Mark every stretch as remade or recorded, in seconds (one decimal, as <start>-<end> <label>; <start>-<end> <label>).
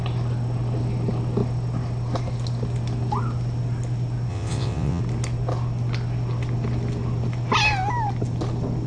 0.0-4.3 recorded; 4.3-5.0 remade; 5.0-8.9 recorded